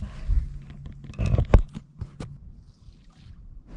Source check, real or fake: real